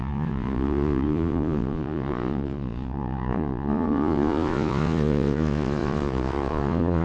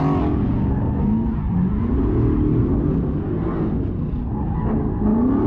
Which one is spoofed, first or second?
first